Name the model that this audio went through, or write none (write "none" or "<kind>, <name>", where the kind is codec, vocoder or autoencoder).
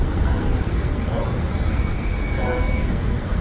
codec, SNAC